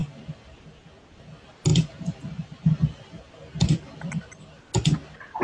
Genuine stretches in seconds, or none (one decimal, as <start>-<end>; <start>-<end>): 0.0-5.4

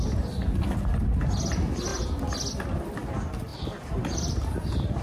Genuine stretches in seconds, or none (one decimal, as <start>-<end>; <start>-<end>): 0.0-3.5